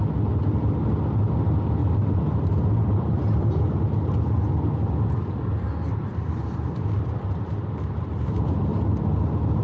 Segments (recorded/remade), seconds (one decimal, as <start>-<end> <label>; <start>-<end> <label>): 0.0-1.8 recorded; 1.8-4.2 remade; 4.2-6.1 recorded; 6.1-8.7 remade; 8.7-9.6 recorded